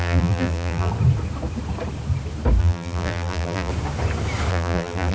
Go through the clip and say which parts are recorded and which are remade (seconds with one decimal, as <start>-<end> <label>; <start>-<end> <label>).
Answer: 0.0-0.9 remade; 0.9-2.6 recorded; 2.6-3.7 remade; 3.7-4.5 recorded; 4.5-5.1 remade